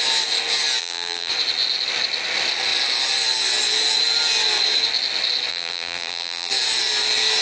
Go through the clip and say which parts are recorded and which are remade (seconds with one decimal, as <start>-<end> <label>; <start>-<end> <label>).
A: 0.0-0.8 recorded; 0.8-1.3 remade; 1.3-5.5 recorded; 5.5-6.5 remade; 6.5-7.4 recorded